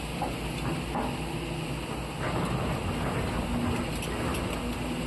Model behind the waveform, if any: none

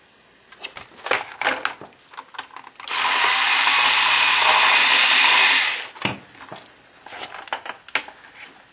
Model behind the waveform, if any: none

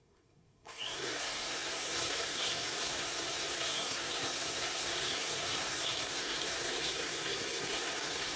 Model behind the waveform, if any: codec, SNAC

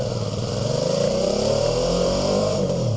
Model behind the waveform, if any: vocoder, BigVGAN v2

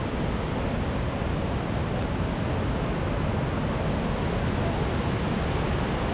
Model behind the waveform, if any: none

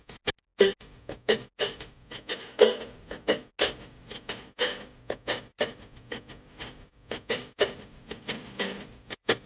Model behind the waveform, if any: none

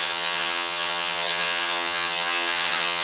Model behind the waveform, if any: vocoder, HiFi-GAN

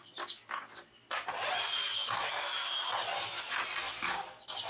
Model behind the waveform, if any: none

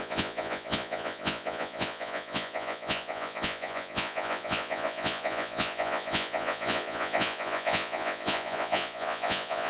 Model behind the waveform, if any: vocoder, Vocos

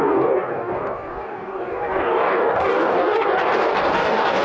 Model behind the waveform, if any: codec, DAC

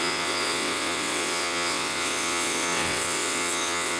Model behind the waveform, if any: vocoder, WaveNeXt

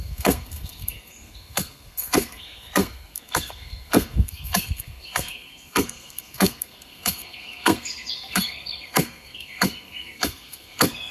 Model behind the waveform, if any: codec, SNAC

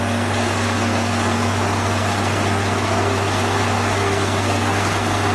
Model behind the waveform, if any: codec, SNAC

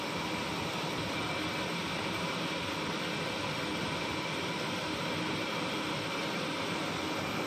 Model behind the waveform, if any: none